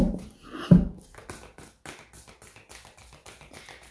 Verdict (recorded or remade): recorded